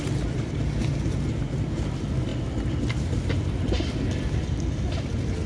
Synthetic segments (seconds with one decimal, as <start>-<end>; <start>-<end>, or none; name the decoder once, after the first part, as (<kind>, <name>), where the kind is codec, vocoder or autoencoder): none